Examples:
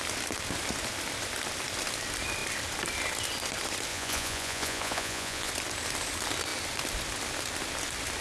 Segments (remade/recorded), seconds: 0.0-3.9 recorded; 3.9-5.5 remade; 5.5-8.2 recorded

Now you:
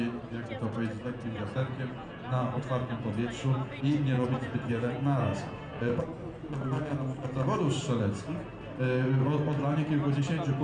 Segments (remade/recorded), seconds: 0.0-1.0 recorded; 1.0-6.0 remade; 6.0-10.6 recorded